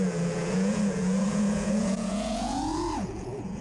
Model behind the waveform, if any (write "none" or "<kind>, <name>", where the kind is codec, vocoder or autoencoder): vocoder, Vocos